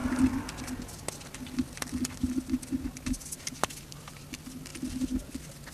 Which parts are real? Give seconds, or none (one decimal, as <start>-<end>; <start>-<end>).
0.0-5.7